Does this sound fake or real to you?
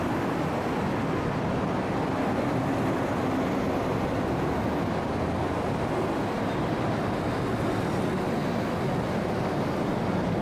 real